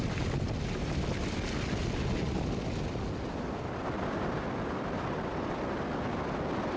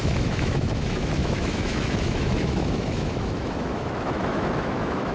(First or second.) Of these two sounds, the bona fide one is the first